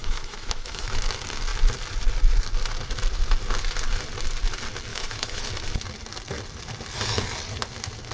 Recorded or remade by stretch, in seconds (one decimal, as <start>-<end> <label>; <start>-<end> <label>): 0.0-1.0 remade; 1.0-4.9 recorded; 4.9-5.5 remade; 5.5-8.1 recorded

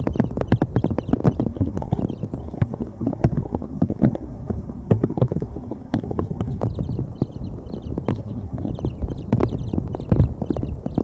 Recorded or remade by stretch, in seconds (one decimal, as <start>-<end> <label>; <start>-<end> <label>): 0.0-1.5 recorded; 1.5-2.0 remade; 2.0-2.4 recorded; 2.4-6.6 remade; 6.6-8.1 recorded; 8.1-8.7 remade; 8.7-11.0 recorded

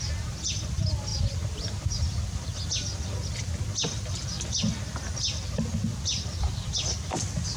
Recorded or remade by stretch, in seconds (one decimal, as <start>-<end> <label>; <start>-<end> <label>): 0.0-7.6 recorded

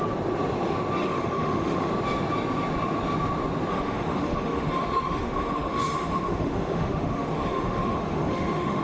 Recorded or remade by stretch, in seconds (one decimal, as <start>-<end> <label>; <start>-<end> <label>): 0.0-1.0 recorded; 1.0-1.9 remade; 1.9-3.7 recorded; 3.7-8.8 remade

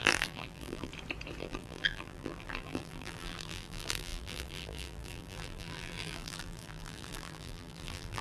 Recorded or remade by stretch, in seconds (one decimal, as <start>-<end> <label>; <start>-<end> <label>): 0.0-0.9 remade; 0.9-1.4 recorded; 1.4-8.2 remade

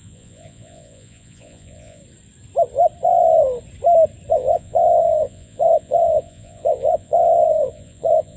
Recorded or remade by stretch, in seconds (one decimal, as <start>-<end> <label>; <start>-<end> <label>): 0.0-2.0 remade; 2.0-4.3 recorded; 4.3-8.4 remade

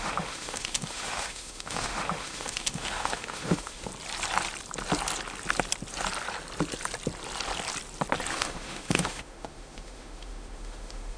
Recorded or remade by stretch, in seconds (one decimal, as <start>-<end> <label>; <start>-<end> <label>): 0.0-3.9 remade; 3.9-8.3 recorded; 8.3-11.2 remade

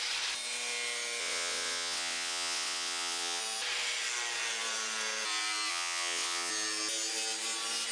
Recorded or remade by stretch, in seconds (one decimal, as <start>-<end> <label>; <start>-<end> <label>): 0.0-1.2 recorded; 1.2-3.4 remade; 3.4-5.7 recorded; 5.7-6.5 remade; 6.5-7.9 recorded